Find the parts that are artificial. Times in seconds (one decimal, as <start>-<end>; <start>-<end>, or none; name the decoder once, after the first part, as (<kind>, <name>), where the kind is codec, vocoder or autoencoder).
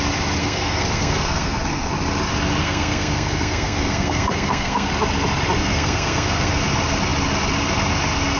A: 0.4-1.9 (codec, SNAC); 2.6-4.9; 5.6-6.6